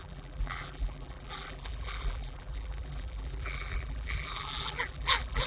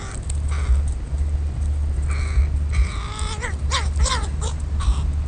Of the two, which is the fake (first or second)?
first